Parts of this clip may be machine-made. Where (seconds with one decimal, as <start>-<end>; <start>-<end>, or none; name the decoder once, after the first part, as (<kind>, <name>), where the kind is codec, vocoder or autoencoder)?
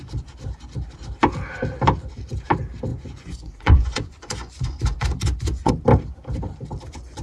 2.9-5.7 (vocoder, Vocos)